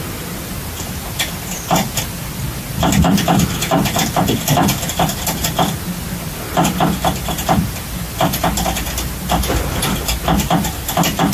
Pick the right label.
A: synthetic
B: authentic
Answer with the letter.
B